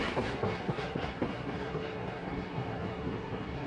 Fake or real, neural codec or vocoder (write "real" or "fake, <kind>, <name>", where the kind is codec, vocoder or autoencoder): fake, codec, SNAC